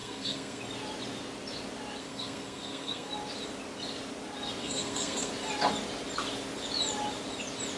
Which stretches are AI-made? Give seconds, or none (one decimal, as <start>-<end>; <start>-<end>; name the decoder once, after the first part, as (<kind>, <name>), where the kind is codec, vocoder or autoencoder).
0.0-0.6 (codec, SNAC); 2.0-3.1; 4.6-5.3